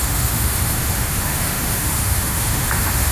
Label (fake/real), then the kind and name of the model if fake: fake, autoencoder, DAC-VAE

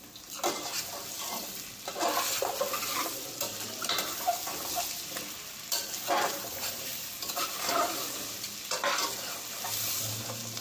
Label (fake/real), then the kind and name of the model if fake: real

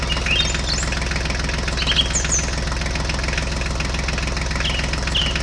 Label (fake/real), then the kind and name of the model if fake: real